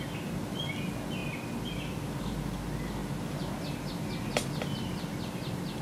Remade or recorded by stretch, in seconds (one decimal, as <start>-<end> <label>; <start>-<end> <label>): 0.0-5.8 recorded